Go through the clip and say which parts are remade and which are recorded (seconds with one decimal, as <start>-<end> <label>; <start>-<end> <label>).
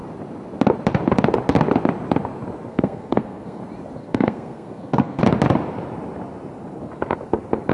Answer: 0.0-2.7 recorded; 2.7-3.6 remade; 3.6-4.0 recorded; 4.0-5.2 remade; 5.2-7.7 recorded